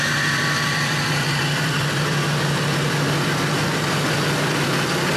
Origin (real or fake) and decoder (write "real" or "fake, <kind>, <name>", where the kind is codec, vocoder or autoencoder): fake, vocoder, BigVGAN v2